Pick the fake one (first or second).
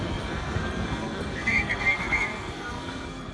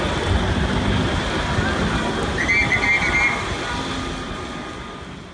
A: first